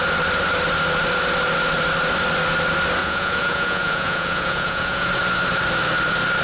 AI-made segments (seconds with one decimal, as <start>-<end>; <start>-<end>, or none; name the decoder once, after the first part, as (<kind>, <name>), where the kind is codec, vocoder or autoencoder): 3.0-5.1 (vocoder, Vocos)